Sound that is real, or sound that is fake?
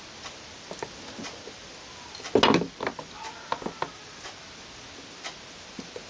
real